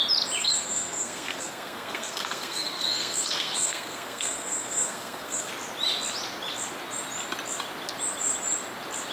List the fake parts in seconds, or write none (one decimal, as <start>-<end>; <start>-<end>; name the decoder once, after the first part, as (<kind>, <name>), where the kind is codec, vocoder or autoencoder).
0.4-5.5 (codec, SNAC)